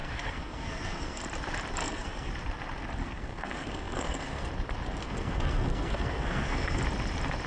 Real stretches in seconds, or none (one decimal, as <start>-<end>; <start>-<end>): 1.2-1.8; 2.3-3.0; 4.5-5.0; 6.8-7.5